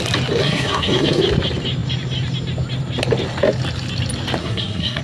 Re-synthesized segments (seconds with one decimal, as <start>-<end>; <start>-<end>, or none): 0.4-1.2; 4.4-5.0